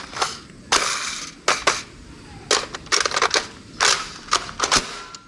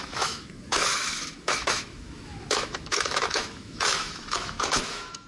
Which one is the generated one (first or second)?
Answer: second